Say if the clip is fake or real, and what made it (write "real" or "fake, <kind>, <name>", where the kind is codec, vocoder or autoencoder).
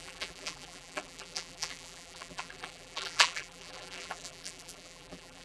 fake, vocoder, BigVGAN v2